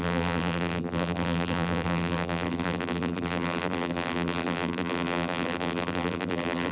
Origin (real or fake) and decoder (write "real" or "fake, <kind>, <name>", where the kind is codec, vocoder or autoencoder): fake, vocoder, BigVGAN v2